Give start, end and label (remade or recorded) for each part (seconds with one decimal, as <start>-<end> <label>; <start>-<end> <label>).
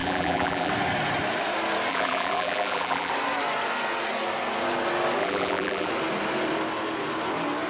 0.0-0.7 remade; 0.7-1.9 recorded; 1.9-3.1 remade; 3.1-5.2 recorded; 5.2-5.9 remade; 5.9-7.7 recorded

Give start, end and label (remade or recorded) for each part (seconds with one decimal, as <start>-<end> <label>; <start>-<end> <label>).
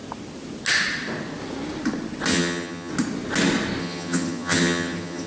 0.0-2.3 recorded; 2.3-2.9 remade; 2.9-3.8 recorded; 3.8-5.3 remade